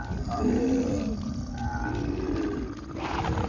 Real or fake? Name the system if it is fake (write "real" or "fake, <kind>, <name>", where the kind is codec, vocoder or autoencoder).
real